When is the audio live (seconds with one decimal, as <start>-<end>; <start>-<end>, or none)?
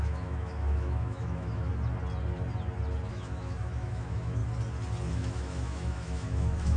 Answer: 1.7-3.1; 4.4-5.1